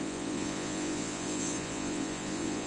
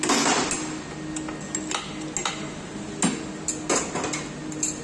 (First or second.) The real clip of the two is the second